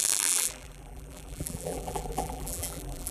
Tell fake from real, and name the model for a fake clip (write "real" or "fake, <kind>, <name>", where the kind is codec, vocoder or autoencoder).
fake, vocoder, BigVGAN v2